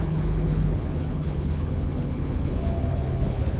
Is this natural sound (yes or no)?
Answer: no